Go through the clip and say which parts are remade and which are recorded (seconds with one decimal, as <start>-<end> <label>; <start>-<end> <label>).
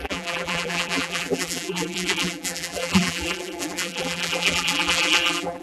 0.0-5.6 remade